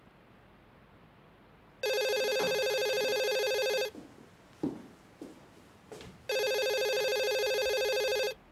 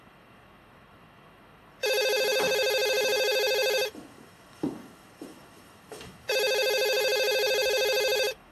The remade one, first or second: second